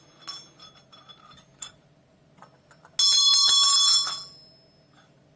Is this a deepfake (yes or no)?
no